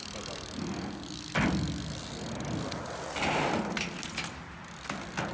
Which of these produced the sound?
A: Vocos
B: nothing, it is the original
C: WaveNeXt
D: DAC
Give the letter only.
B